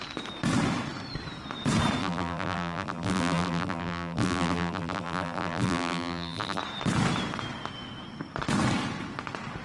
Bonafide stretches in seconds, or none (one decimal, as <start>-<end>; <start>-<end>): 0.0-2.0; 6.6-9.6